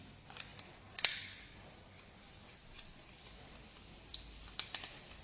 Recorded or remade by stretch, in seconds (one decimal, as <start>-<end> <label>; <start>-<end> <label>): 0.0-0.5 recorded; 0.5-3.1 remade; 3.1-5.2 recorded